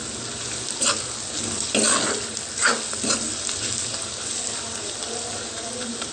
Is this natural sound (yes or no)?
yes